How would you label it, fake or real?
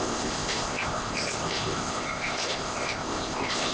fake